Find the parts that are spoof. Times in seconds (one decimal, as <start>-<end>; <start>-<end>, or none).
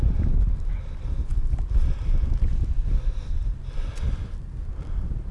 none